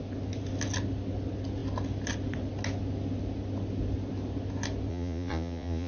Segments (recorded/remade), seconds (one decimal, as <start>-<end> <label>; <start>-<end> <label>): 0.0-4.9 recorded; 4.9-5.9 remade

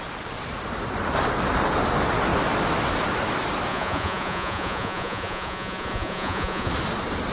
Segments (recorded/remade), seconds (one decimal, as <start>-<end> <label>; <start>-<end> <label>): 0.0-3.7 recorded; 3.7-6.7 remade; 6.7-7.3 recorded

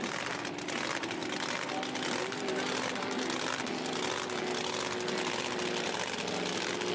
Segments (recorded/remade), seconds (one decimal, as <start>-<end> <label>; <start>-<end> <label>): 0.0-6.9 recorded

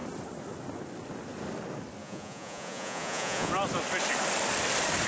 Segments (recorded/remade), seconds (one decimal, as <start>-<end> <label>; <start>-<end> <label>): 0.0-2.0 recorded; 2.0-3.5 remade; 3.5-5.1 recorded

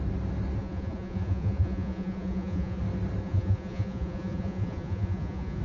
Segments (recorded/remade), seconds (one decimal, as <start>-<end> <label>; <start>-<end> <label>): 0.0-0.6 recorded; 0.6-2.8 remade; 2.8-3.2 recorded; 3.2-5.6 remade

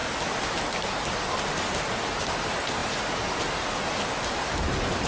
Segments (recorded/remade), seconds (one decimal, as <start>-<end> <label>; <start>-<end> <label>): 0.0-5.1 recorded